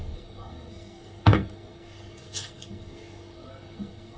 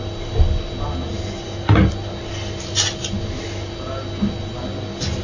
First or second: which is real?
second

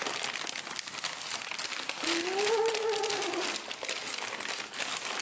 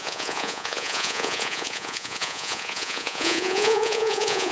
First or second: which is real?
first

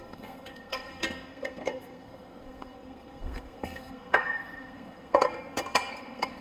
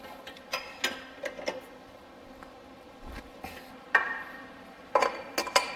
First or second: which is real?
second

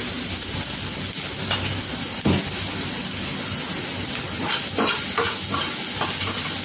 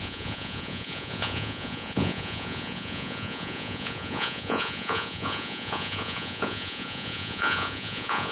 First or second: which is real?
first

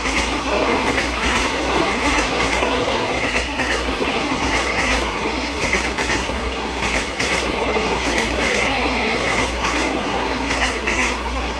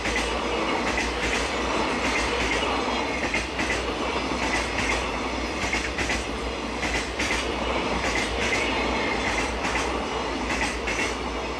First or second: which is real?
second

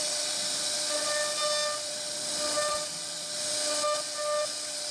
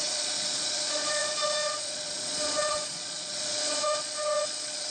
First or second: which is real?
first